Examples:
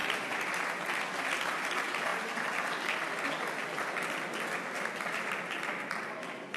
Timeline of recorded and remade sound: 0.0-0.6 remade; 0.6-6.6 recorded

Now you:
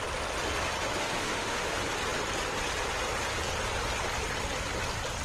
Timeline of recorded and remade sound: 0.0-1.0 recorded; 1.0-1.7 remade; 1.7-5.2 recorded